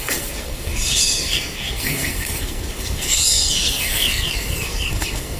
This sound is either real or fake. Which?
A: fake